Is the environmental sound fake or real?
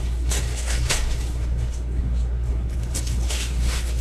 fake